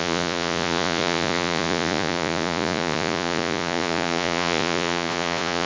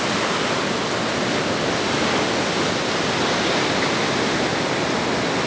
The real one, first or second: second